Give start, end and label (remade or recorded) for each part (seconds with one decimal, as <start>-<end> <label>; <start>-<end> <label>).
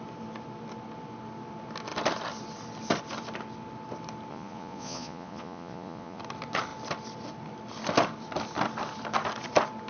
0.0-4.3 recorded; 4.3-6.2 remade; 6.2-9.9 recorded